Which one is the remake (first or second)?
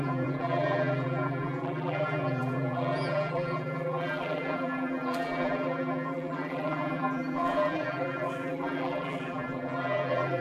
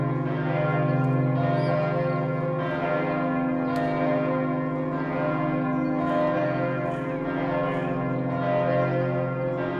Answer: first